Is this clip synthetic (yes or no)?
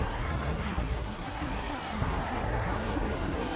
yes